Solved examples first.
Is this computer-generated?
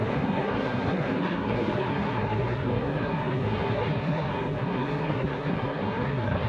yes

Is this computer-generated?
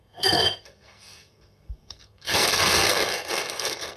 yes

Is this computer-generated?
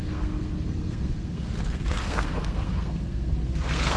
yes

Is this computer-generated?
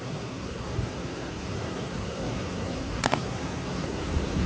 yes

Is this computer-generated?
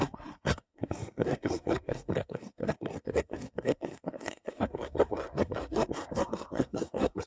yes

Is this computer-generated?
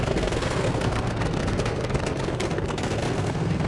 yes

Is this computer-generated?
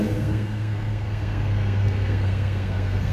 yes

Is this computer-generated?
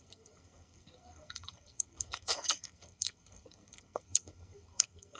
yes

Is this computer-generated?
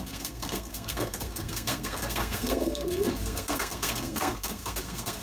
yes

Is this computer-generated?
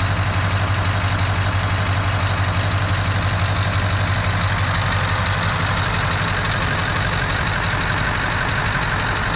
no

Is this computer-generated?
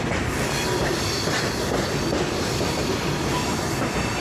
no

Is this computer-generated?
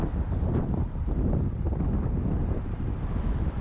no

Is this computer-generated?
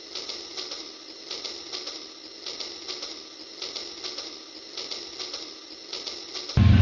no